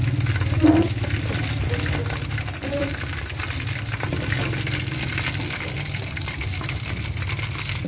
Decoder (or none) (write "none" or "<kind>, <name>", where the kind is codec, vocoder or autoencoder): none